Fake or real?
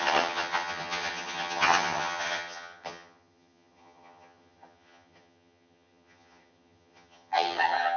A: fake